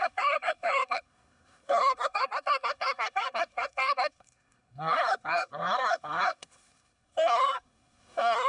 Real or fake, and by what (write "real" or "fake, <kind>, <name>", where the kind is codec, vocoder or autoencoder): fake, codec, SNAC